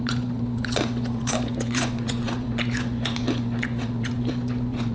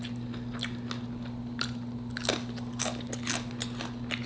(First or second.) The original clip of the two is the second